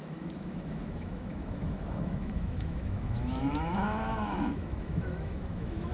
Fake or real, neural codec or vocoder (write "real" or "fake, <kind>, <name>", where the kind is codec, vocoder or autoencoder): fake, autoencoder, DAC-VAE